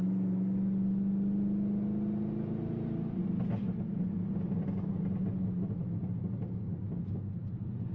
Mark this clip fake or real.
real